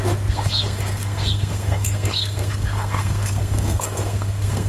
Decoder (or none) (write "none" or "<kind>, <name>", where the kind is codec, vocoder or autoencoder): codec, SNAC